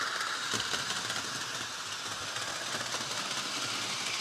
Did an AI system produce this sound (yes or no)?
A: no